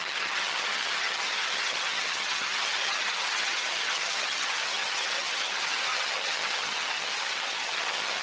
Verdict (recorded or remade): remade